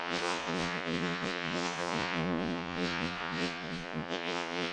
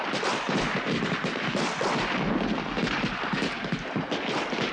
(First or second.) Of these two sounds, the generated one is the first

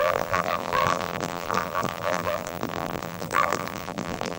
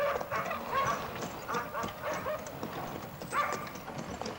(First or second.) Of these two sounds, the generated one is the first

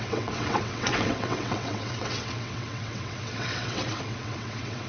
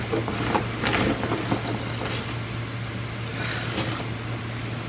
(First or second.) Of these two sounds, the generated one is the first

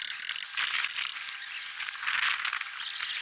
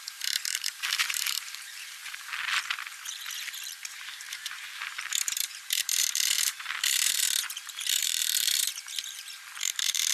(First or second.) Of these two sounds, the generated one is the second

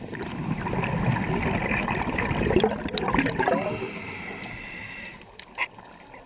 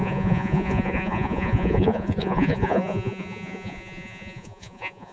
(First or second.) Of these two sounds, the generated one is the second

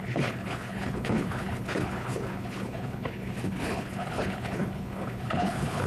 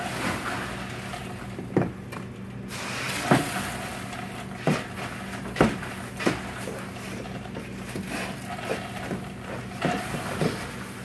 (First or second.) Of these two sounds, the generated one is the first